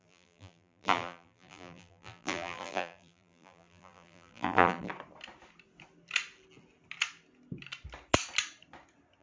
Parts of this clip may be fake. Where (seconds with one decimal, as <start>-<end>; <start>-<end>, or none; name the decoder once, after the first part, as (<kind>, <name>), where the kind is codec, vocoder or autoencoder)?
0.0-4.9 (vocoder, BigVGAN v2)